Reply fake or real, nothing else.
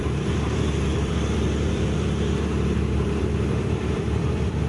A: fake